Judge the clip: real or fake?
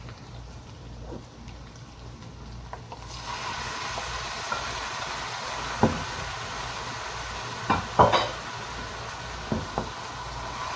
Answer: real